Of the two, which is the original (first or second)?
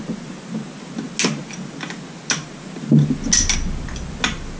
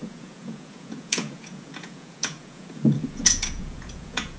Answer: first